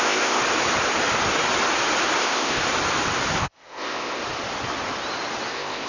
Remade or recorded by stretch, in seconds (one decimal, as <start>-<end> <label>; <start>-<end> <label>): 0.0-0.4 remade; 0.4-2.2 recorded; 2.2-2.6 remade; 2.6-3.4 recorded; 3.4-4.2 remade; 4.2-5.5 recorded; 5.5-5.9 remade